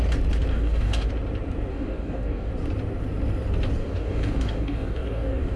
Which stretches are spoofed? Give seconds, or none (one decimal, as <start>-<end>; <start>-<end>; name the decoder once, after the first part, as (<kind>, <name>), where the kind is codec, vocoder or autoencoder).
0.5-1.1 (codec, DAC); 1.7-2.5; 3.8-5.6